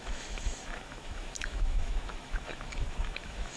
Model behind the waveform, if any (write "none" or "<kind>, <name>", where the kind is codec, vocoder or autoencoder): autoencoder, DAC-VAE